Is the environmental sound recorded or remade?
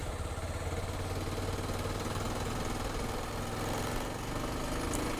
recorded